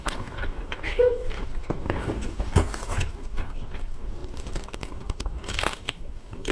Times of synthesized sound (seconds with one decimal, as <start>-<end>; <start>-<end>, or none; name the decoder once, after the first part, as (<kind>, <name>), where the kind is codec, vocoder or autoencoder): 0.0-6.5 (codec, DAC)